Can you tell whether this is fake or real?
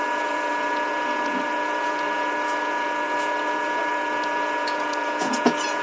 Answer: fake